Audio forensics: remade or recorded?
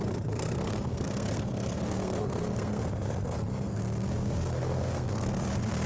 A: remade